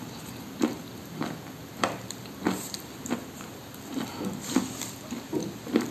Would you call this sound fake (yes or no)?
no